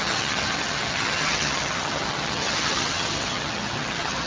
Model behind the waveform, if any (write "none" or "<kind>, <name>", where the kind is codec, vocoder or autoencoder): vocoder, HiFi-GAN